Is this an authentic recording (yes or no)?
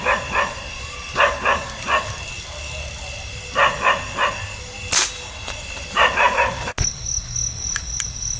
yes